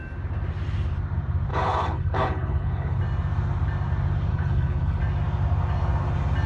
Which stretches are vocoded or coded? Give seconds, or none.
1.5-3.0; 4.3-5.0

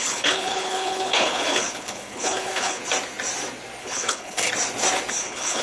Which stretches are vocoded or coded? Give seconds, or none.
0.0-2.8; 3.8-4.5; 5.1-5.6

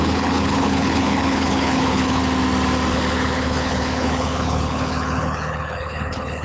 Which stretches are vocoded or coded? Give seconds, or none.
0.0-2.2; 2.9-6.4

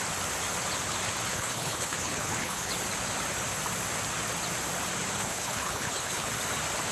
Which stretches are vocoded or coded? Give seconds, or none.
1.3-2.7; 5.2-6.3

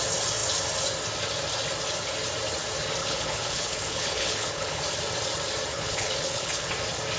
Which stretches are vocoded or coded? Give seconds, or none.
3.0-4.8; 5.7-6.7

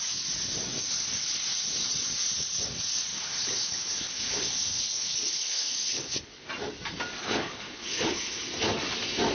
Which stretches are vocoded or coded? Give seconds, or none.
3.1-6.5; 7.2-8.4